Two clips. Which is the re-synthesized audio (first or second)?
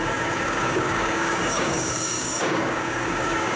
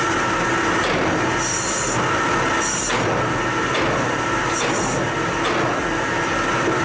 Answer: first